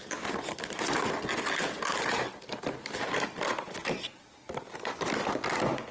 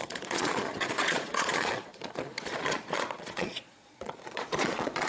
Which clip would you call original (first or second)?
first